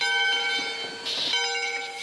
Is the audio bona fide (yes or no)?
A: yes